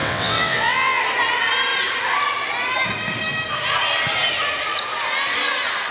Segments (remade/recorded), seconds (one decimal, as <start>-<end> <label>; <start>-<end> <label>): 0.0-1.0 remade; 1.0-5.9 recorded